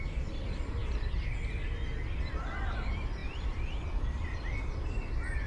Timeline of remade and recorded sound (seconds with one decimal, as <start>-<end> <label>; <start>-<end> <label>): 0.0-3.2 recorded; 3.2-5.5 remade